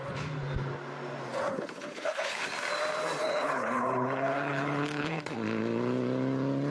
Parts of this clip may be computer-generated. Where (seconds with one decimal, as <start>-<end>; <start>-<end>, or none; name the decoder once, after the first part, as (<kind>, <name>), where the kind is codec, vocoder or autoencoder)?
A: 1.5-2.4 (codec, HILCodec); 3.2-5.3